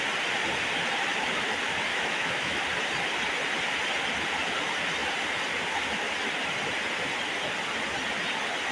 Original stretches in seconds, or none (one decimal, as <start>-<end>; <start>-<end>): 0.0-1.9; 2.6-8.7